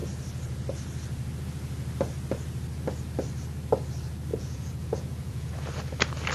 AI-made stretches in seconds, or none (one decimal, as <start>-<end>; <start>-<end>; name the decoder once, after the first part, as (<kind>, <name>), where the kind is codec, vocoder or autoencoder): 4.3-5.5 (vocoder, Vocos)